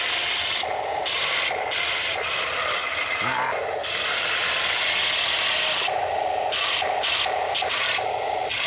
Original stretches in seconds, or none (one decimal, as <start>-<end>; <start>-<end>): 0.0-8.7